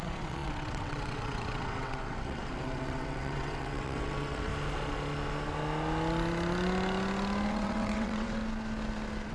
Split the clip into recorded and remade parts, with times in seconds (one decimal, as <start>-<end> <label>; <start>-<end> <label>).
0.0-4.5 remade; 4.5-7.5 recorded; 7.5-8.4 remade; 8.4-9.3 recorded